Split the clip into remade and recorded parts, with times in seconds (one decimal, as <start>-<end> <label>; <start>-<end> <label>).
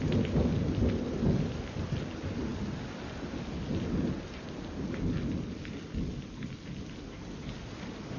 0.0-8.2 recorded